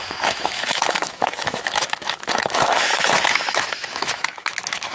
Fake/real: fake